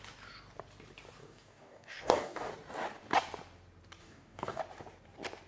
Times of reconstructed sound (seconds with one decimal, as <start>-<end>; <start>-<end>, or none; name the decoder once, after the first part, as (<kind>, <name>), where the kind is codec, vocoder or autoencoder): 1.2-2.5 (codec, DAC); 4.0-4.6